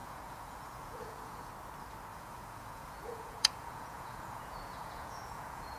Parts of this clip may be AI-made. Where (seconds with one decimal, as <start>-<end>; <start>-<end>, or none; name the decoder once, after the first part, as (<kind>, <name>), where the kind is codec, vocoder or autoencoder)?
0.0-1.5 (vocoder, Vocos); 2.1-5.8

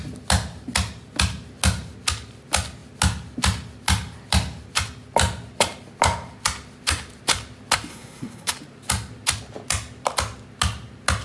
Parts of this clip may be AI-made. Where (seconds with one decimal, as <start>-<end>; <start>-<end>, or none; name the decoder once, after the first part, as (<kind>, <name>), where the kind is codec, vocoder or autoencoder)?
7.9-8.5 (codec, SNAC)

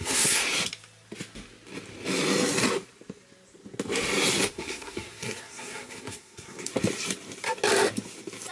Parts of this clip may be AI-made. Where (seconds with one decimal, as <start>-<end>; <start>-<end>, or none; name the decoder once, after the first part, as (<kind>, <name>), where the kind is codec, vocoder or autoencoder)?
0.0-0.4 (codec, SNAC); 4.5-6.7